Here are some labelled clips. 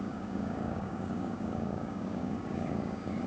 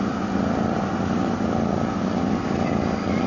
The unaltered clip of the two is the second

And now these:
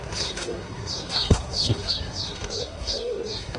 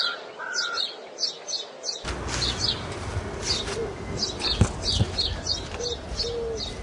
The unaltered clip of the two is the second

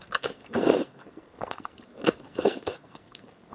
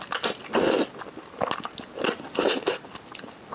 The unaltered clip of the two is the second